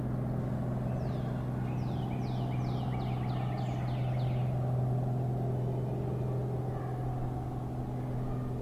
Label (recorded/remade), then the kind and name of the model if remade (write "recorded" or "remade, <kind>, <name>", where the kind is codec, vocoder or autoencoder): recorded